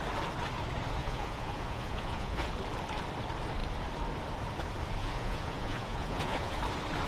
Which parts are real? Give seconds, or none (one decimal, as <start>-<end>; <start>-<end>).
0.0-1.0; 2.5-5.0; 6.6-7.1